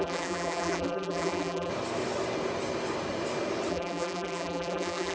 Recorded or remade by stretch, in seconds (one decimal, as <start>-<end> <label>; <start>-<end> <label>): 0.0-1.7 remade; 1.7-3.7 recorded; 3.7-5.1 remade